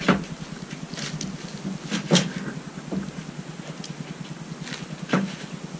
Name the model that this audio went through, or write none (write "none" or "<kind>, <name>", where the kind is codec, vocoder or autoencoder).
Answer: none